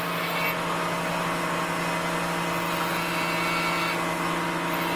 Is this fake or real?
real